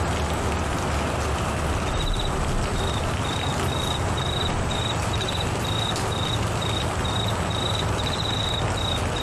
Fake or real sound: real